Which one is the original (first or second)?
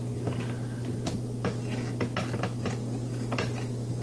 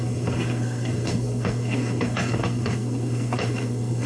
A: first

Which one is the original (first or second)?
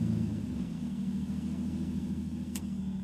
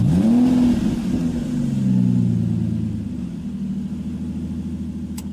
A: second